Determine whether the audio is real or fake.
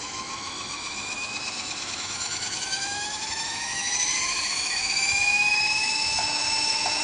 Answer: fake